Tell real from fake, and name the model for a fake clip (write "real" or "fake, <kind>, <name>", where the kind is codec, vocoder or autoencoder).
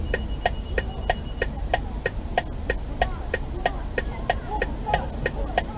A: real